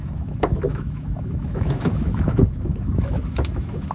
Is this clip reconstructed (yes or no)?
yes